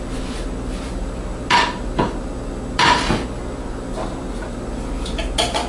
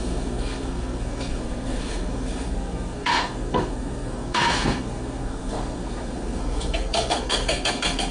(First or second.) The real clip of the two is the first